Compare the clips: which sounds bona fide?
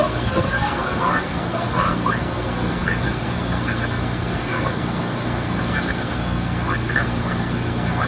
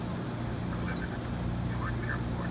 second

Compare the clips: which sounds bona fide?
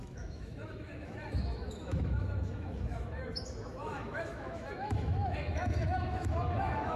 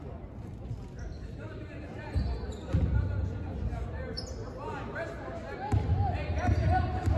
second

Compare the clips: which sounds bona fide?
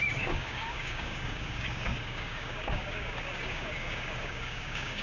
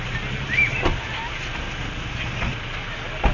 second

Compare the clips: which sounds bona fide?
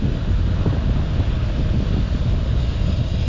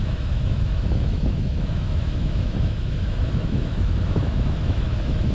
first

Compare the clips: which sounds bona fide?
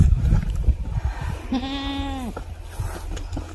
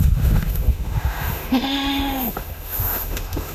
first